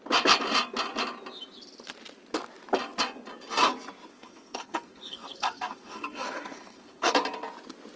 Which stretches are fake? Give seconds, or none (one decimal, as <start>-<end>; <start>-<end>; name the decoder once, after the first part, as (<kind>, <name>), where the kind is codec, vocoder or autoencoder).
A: 4.1-7.1 (codec, SNAC)